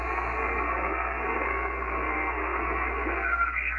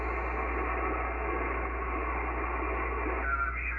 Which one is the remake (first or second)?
first